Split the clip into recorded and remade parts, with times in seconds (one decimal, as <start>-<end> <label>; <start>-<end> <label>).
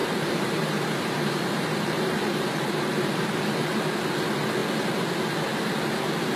0.0-3.8 remade; 3.8-6.4 recorded